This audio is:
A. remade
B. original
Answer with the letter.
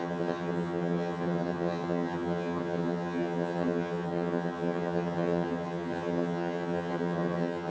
A